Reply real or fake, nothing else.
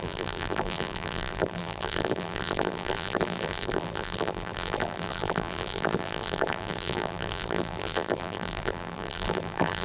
fake